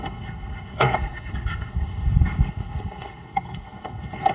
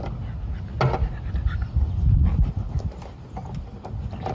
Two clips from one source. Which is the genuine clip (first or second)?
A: second